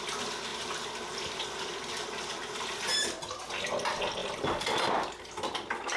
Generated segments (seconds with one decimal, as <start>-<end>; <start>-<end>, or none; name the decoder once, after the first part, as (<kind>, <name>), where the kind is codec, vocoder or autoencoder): 0.5-3.4 (vocoder, BigVGAN v2); 4.2-4.9